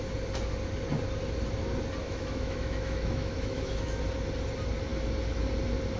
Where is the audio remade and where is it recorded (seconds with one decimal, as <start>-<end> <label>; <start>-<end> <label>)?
0.0-2.0 recorded; 2.0-4.0 remade; 4.0-6.0 recorded

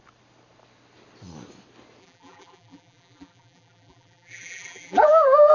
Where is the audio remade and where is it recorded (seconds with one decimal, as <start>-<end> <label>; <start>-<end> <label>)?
0.0-2.0 recorded; 2.0-5.5 remade

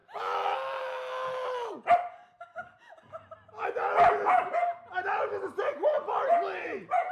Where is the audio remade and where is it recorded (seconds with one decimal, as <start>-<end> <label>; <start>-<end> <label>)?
0.0-7.1 recorded

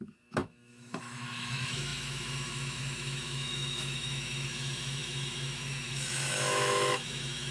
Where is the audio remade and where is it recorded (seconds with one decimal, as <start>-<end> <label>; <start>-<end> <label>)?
0.0-7.5 remade